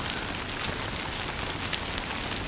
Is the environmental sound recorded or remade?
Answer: recorded